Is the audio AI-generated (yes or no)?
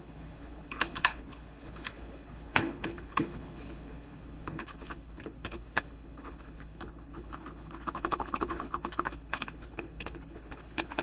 yes